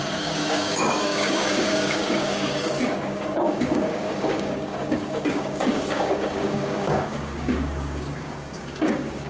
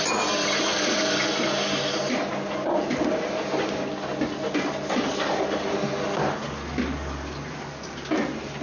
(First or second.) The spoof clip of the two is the first